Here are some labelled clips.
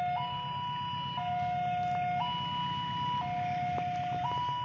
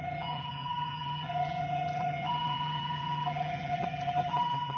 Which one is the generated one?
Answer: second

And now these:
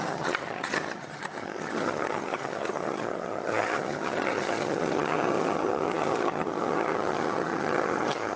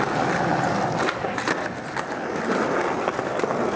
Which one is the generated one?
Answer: first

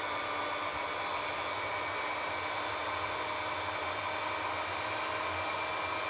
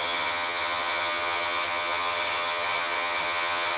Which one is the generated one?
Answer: second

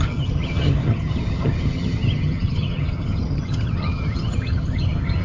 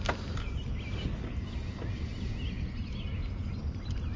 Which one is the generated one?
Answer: first